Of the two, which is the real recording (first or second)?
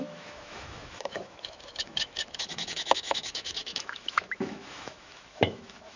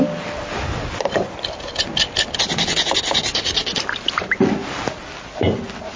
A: second